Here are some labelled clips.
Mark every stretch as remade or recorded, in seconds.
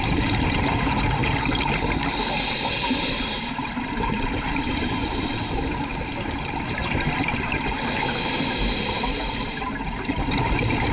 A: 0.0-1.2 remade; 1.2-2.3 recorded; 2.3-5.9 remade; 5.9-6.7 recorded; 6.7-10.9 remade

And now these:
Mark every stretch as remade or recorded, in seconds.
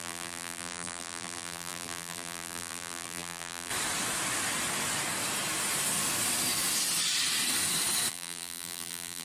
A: 0.0-3.7 remade; 3.7-8.1 recorded; 8.1-9.2 remade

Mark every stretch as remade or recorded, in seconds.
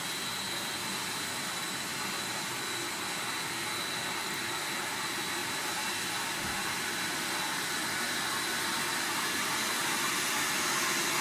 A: 0.0-5.4 recorded; 5.4-6.1 remade; 6.1-11.2 recorded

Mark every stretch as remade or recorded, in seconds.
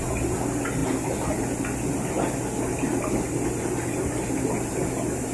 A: 0.0-5.3 recorded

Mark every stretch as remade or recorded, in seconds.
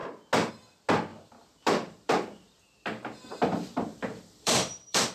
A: 0.0-1.1 recorded; 1.1-2.6 remade; 2.6-3.3 recorded; 3.3-5.1 remade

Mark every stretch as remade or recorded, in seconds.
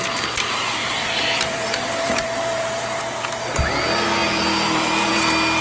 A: 0.0-0.8 recorded; 0.8-3.0 remade; 3.0-5.6 recorded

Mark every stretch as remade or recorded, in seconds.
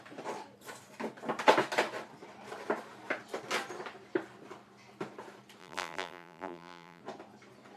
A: 0.0-5.6 recorded; 5.6-7.0 remade; 7.0-7.8 recorded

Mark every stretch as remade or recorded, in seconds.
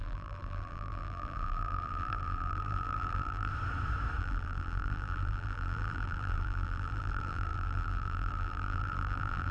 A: 0.0-3.5 remade; 3.5-4.2 recorded; 4.2-9.5 remade